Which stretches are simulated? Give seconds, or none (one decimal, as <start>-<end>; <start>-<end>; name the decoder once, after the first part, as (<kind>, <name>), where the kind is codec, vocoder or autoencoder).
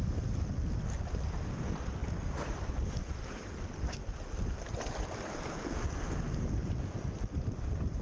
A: 2.0-2.5 (vocoder, BigVGAN v2); 3.0-5.7